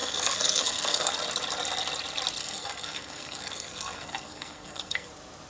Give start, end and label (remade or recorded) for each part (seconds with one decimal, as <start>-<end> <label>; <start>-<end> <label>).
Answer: 0.0-1.1 remade; 1.1-2.4 recorded; 2.4-5.1 remade; 5.1-5.5 recorded